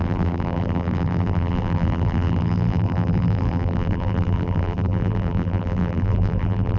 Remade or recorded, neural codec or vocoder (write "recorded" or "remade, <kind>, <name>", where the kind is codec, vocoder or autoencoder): remade, vocoder, BigVGAN v2